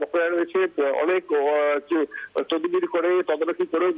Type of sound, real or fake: real